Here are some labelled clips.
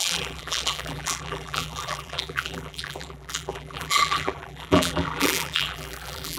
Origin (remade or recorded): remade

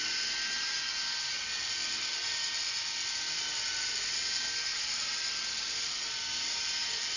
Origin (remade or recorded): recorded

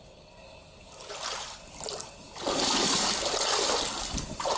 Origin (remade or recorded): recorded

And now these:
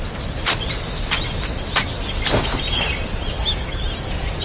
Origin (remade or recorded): recorded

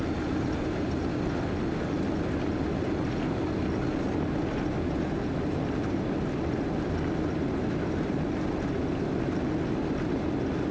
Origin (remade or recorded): recorded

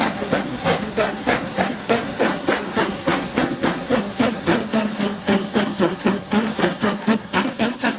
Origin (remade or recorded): remade